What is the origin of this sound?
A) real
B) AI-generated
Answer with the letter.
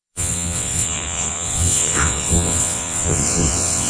B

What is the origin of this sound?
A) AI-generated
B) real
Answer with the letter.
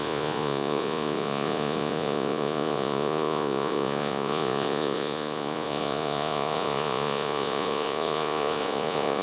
A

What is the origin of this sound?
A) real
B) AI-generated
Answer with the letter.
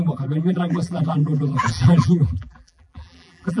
B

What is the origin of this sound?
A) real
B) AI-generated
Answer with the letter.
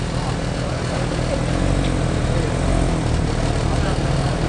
A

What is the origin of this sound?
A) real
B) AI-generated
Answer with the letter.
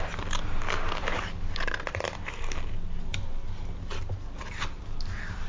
A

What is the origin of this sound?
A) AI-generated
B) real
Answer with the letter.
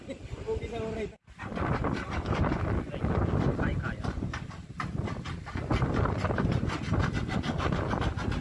B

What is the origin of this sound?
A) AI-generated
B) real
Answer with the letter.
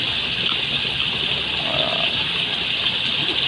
B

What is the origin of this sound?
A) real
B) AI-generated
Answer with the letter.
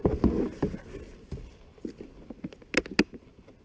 A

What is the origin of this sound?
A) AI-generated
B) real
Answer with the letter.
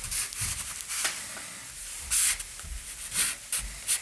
B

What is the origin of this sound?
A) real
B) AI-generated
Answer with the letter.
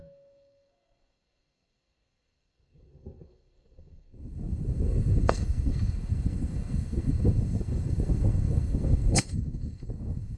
B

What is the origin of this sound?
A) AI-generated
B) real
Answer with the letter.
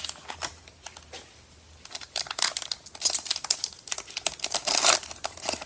B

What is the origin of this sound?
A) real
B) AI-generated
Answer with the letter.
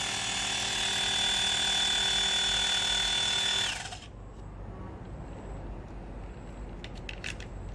A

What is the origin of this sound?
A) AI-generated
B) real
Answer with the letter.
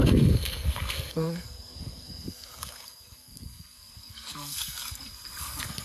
A